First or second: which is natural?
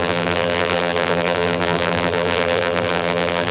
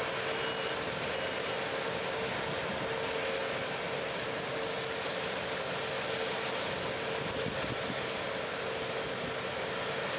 second